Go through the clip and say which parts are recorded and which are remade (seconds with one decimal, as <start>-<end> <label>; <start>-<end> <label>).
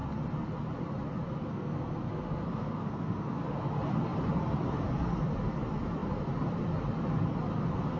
0.0-1.5 recorded; 1.5-3.4 remade; 3.4-8.0 recorded